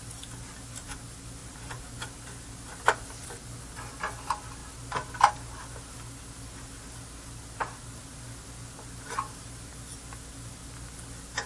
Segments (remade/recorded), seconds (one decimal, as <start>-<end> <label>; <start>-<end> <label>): 0.0-1.4 recorded; 1.4-2.4 remade; 2.4-11.5 recorded